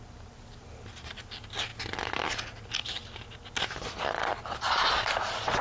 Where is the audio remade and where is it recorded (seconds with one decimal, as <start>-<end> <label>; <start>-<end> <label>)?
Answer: 0.0-5.6 recorded